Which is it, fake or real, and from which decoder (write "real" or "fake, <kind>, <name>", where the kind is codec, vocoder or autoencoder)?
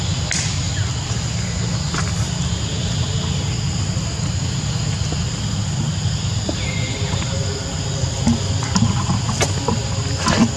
real